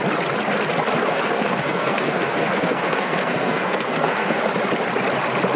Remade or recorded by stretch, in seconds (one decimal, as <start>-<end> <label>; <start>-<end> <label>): 0.0-1.1 recorded; 1.1-4.4 remade; 4.4-5.6 recorded